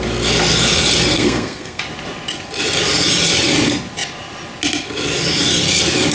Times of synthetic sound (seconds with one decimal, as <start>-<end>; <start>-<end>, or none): 1.1-1.8